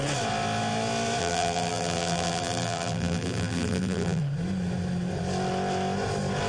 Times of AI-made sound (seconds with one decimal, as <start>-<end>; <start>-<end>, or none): 1.2-4.2